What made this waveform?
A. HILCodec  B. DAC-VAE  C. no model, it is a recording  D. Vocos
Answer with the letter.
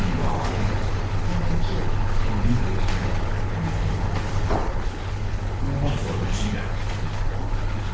A